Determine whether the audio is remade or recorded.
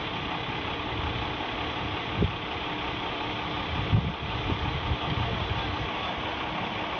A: recorded